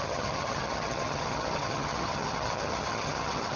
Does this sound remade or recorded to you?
remade